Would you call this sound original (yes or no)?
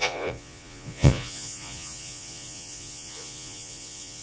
no